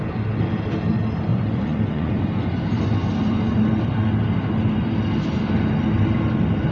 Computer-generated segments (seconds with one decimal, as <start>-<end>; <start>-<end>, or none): 1.3-2.1